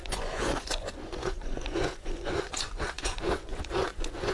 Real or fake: fake